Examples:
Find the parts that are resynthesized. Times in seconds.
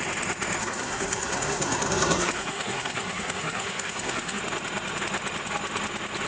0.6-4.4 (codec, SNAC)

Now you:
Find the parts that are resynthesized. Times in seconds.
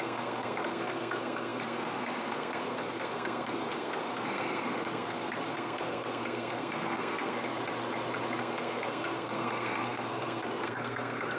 0.0-7.5 (codec, SNAC); 8.4-11.4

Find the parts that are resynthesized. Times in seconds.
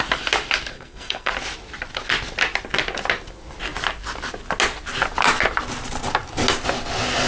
0.7-1.3 (codec, SNAC)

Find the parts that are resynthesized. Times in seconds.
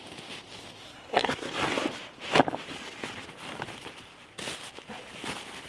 0.8-1.5 (codec, SNAC)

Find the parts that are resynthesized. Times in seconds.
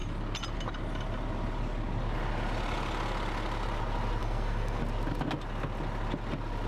4.2-4.8 (codec, SNAC)